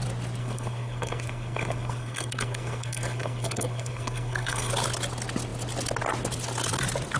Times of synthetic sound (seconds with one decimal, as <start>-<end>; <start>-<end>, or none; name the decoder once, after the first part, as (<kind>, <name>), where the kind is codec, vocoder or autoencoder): 0.4-4.7 (codec, SNAC)